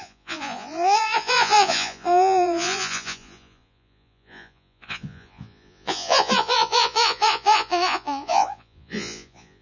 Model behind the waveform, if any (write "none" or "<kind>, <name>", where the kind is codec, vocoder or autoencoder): vocoder, Vocos